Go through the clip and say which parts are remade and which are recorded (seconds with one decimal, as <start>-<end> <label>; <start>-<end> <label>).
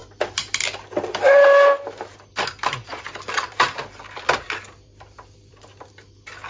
0.0-2.9 recorded; 2.9-5.8 remade; 5.8-6.5 recorded